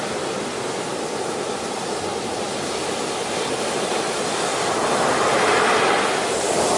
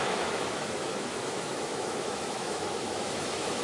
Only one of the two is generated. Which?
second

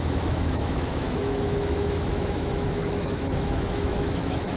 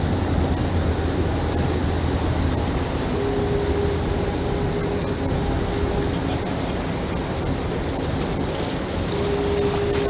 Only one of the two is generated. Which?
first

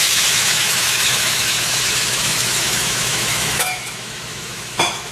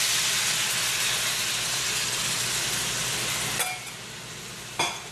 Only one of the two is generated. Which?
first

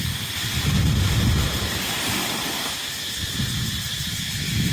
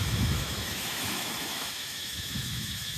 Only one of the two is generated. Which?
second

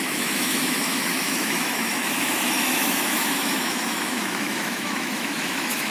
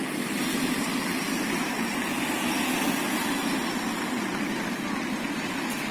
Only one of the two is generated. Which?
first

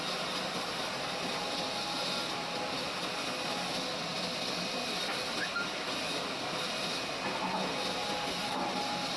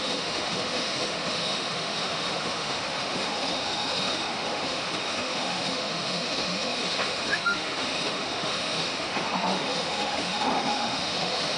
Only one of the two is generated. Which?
second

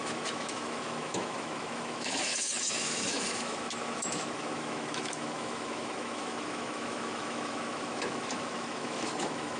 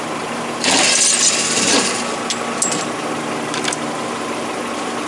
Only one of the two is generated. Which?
first